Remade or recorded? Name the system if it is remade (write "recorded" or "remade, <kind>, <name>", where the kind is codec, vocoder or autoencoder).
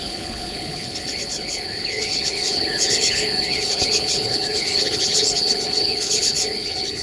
remade, codec, HILCodec